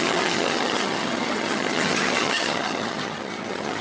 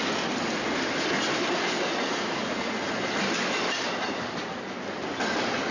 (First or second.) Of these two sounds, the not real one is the first